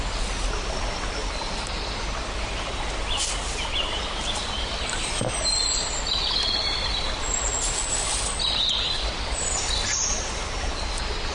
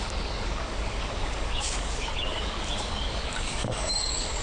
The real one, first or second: first